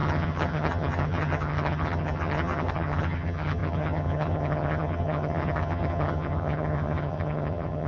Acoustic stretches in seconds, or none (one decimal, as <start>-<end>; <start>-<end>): none